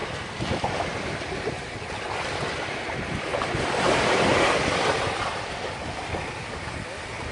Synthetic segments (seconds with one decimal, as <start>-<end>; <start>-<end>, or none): none